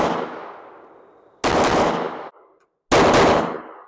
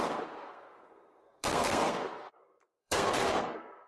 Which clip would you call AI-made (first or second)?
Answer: second